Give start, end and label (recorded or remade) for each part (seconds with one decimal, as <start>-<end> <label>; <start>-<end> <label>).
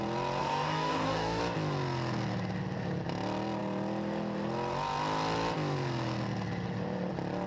0.0-0.4 recorded; 0.4-1.4 remade; 1.4-7.5 recorded